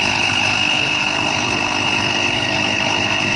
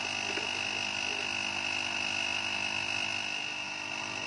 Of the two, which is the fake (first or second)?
first